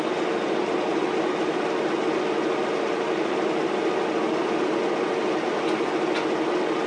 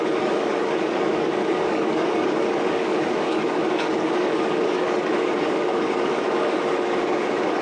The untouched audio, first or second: first